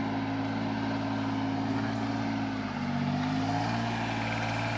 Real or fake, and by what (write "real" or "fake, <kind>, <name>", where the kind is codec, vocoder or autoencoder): real